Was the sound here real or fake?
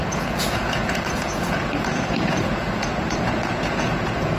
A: fake